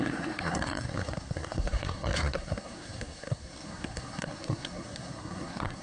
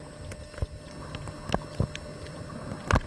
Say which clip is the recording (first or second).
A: second